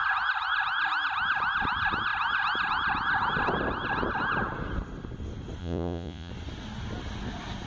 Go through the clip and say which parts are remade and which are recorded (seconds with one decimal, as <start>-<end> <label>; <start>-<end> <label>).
0.0-5.6 recorded; 5.6-6.3 remade; 6.3-7.7 recorded